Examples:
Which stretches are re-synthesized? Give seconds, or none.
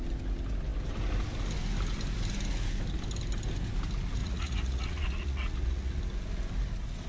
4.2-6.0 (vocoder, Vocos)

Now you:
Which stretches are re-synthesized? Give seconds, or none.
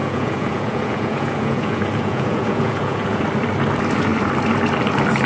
0.0-3.2 (vocoder, Vocos)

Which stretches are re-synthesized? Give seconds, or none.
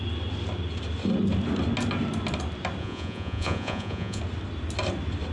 2.8-4.2 (vocoder, Vocos)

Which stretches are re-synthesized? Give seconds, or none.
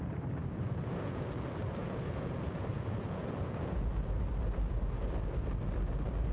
0.4-1.3 (vocoder, Vocos); 1.8-3.9